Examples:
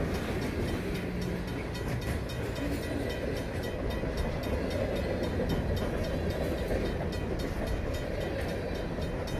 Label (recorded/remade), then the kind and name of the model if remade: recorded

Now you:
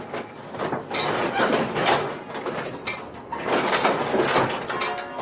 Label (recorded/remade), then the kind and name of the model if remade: recorded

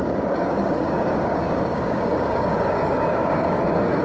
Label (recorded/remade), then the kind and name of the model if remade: remade, codec, DAC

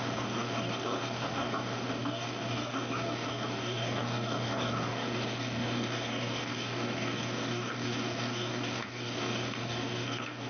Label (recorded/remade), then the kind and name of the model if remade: remade, codec, DAC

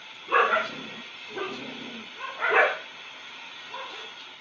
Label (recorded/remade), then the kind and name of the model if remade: recorded